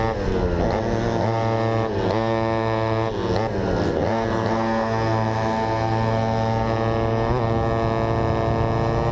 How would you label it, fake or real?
real